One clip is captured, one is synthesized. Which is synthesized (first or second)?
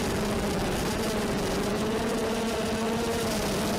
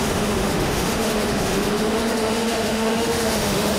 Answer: second